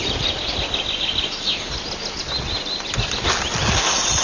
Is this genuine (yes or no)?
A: yes